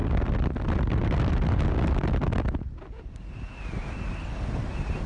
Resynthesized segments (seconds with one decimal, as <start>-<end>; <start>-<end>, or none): none